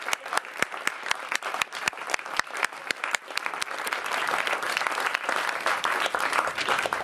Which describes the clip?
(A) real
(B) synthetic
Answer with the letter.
B